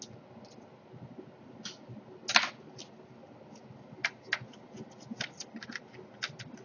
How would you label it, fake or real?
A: real